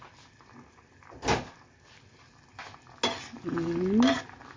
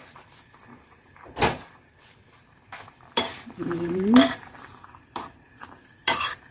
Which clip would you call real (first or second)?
first